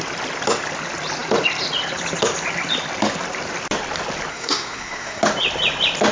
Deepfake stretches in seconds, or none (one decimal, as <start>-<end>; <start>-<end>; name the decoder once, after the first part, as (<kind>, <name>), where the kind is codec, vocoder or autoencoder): 4.3-5.2 (codec, SNAC)